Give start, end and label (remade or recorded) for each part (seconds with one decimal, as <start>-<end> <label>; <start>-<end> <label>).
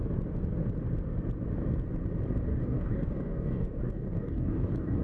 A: 0.0-2.5 recorded; 2.5-5.0 remade